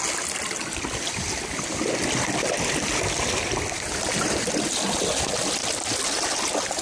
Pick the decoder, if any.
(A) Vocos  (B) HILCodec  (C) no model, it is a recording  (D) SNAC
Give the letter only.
C